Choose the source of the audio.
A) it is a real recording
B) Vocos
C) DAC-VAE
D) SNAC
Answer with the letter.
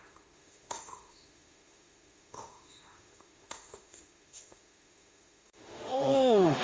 C